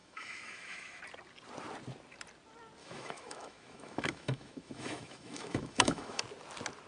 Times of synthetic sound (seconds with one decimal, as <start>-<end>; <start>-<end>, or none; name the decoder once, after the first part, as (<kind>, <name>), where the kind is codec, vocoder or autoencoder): 0.0-1.0 (autoencoder, DAC-VAE); 2.8-6.2